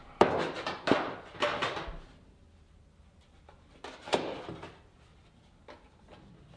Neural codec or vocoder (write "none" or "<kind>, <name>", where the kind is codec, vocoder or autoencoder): none